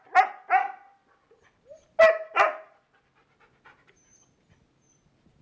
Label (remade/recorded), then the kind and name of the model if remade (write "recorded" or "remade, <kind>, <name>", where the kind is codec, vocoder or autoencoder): recorded